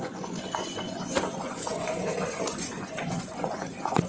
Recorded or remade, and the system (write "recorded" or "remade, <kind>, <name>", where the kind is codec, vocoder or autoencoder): remade, vocoder, Vocos